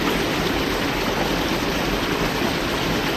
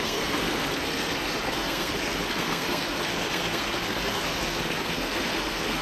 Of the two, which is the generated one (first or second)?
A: second